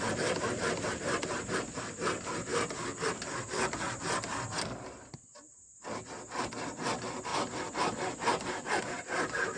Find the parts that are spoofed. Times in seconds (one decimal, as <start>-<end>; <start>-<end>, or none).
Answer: none